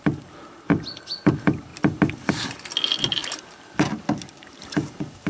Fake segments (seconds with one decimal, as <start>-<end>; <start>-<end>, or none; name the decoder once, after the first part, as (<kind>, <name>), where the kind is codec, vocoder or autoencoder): none